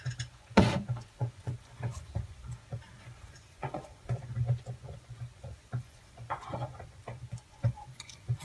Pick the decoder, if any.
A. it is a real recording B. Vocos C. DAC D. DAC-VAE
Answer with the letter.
B